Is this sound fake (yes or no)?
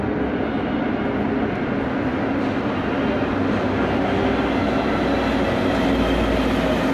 no